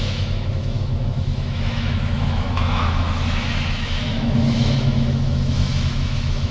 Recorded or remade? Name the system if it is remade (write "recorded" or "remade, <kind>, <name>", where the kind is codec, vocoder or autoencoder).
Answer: remade, autoencoder, DAC-VAE